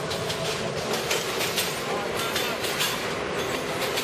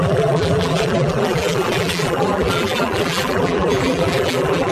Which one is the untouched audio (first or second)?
first